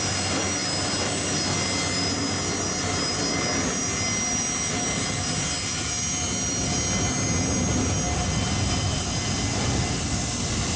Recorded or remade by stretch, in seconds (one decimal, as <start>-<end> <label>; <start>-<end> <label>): 0.0-10.8 recorded